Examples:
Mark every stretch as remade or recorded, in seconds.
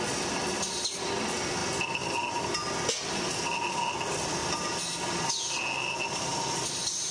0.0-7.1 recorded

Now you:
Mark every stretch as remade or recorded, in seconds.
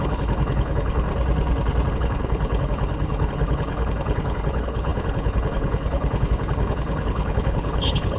0.0-1.1 remade; 1.1-1.9 recorded; 1.9-8.2 remade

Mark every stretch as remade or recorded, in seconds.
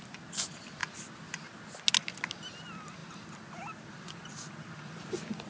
0.0-5.5 recorded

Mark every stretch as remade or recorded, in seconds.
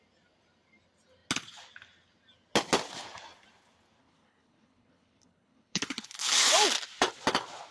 0.0-4.0 recorded; 4.0-6.5 remade; 6.5-7.7 recorded